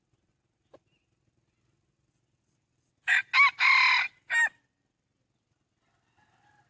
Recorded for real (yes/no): yes